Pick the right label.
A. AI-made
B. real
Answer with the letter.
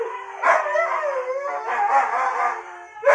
B